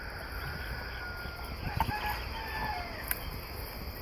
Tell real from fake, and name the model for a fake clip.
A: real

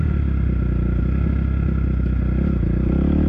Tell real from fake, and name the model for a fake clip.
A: real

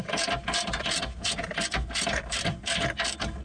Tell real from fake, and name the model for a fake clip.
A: real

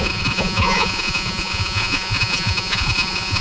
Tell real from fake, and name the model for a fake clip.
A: fake, vocoder, Vocos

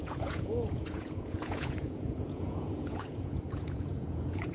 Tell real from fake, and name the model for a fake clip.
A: fake, vocoder, Vocos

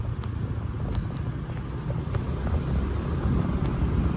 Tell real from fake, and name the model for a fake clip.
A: real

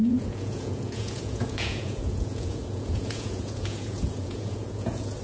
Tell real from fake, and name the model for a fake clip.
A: fake, vocoder, Vocos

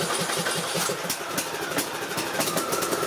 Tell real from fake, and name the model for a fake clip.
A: real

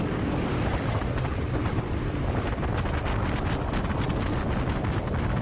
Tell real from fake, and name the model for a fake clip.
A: real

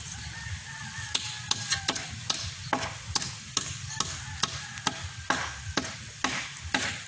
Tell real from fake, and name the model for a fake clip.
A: real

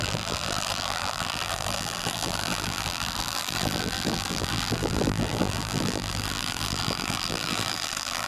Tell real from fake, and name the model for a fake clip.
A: fake, vocoder, BigVGAN v2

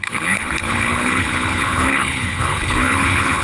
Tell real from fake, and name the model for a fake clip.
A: fake, codec, HILCodec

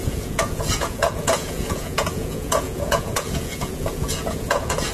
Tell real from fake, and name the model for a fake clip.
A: fake, vocoder, Vocos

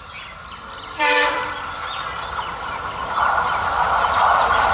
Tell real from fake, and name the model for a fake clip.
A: fake, vocoder, BigVGAN v2